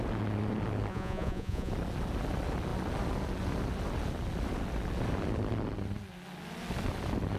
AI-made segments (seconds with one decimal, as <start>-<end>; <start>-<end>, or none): 0.9-1.7